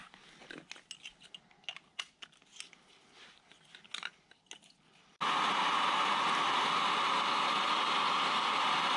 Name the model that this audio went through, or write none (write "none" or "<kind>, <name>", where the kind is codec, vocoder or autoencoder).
none